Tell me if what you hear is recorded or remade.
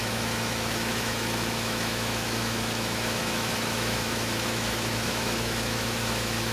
remade